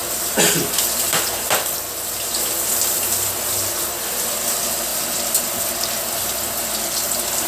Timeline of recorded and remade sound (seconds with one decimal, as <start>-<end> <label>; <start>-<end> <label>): 0.0-4.1 remade; 4.1-4.9 recorded; 4.9-5.6 remade; 5.6-7.5 recorded

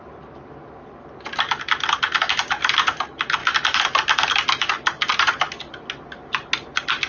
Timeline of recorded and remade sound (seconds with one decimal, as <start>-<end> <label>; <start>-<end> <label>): 0.0-7.1 recorded

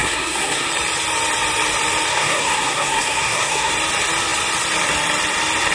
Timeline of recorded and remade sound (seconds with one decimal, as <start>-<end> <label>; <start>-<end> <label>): 0.0-0.7 remade; 0.7-2.1 recorded; 2.1-3.7 remade; 3.7-5.7 recorded

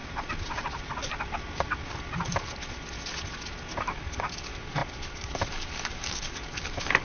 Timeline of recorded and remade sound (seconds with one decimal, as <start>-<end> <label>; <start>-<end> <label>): 0.0-3.8 recorded; 3.8-7.0 remade